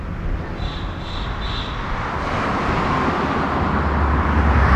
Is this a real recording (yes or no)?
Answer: yes